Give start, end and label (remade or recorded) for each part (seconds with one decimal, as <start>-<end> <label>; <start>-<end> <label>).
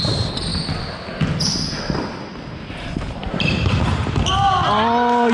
0.0-3.2 recorded; 3.2-4.2 remade; 4.2-5.3 recorded